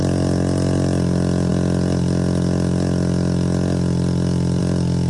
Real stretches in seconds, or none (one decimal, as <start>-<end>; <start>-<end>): 0.0-5.1

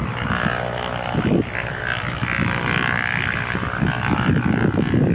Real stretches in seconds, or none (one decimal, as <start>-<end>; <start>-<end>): 0.0-5.1

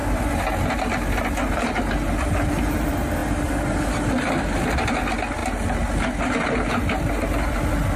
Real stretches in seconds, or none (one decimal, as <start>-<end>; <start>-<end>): 0.0-8.0

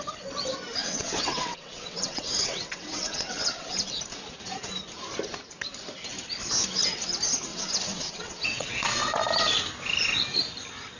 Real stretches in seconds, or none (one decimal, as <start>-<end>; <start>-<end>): 0.0-0.8; 4.0-7.5; 9.2-11.0

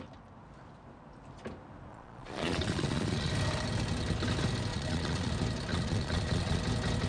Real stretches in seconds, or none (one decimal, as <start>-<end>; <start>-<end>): 0.0-1.9; 3.3-4.7; 5.3-5.7; 6.6-7.1

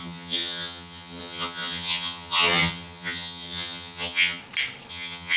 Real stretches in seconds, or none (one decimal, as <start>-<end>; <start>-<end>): 4.4-4.9

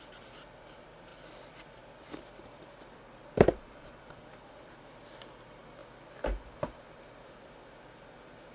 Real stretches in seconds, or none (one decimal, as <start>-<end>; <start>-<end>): 5.8-7.2

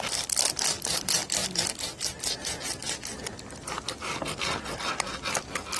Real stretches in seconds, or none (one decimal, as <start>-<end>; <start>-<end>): 0.0-5.8